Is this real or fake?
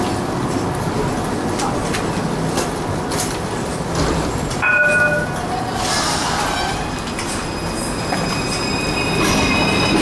real